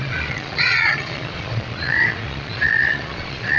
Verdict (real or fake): fake